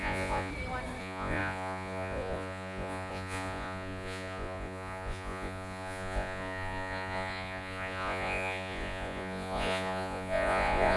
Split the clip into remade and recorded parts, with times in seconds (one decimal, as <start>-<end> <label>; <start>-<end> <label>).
0.0-0.5 remade; 0.5-1.0 recorded; 1.0-11.0 remade